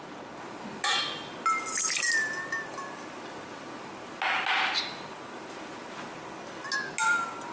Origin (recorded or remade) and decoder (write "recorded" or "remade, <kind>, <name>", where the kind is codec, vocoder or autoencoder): recorded